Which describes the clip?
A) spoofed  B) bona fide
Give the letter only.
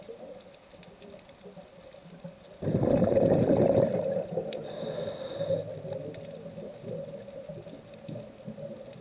B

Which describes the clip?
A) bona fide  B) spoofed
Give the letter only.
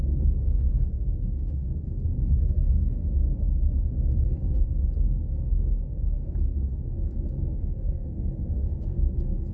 B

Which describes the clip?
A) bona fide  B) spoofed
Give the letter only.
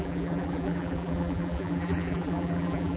B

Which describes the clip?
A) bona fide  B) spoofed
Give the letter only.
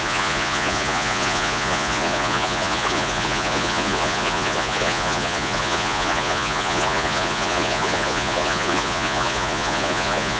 B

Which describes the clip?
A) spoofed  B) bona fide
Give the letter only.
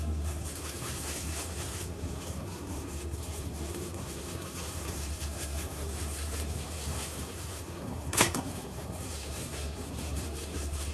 A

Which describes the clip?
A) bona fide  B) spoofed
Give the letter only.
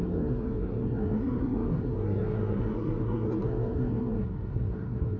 B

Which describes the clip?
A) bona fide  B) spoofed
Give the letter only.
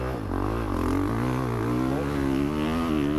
A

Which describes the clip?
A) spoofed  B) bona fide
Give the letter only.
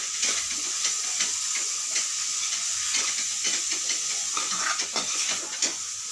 A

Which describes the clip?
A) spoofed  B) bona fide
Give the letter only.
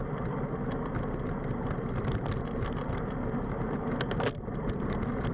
B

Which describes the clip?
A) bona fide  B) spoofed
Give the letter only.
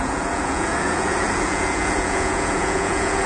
B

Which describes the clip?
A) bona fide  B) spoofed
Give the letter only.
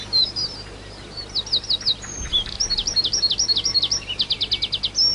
A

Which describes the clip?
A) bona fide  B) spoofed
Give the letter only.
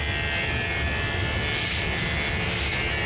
A